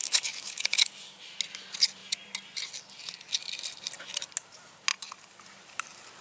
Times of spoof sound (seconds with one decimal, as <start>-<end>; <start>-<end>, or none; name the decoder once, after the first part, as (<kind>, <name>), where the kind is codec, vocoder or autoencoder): 0.0-1.2 (codec, DAC)